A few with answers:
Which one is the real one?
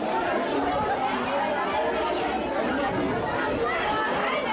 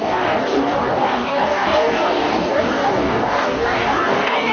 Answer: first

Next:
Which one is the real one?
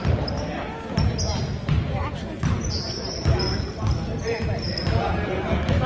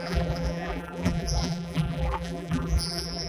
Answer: first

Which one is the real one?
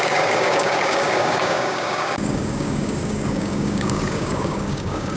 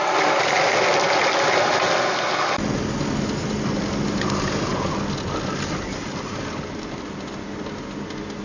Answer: second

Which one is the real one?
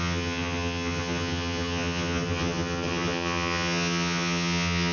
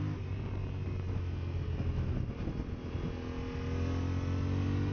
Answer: second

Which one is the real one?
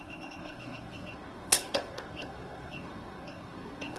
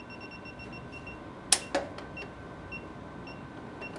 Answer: second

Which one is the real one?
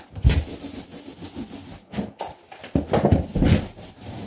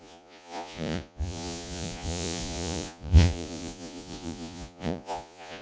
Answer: first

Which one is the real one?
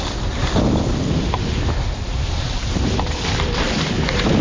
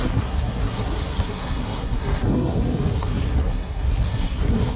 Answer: first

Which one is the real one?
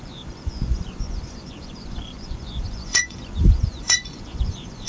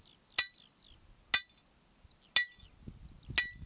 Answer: second